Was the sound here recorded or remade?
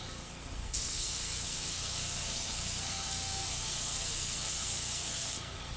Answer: remade